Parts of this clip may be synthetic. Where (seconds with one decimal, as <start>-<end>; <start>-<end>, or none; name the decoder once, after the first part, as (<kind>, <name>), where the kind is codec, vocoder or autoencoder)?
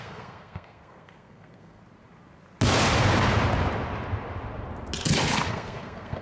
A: 0.0-1.8 (codec, SNAC); 5.5-6.2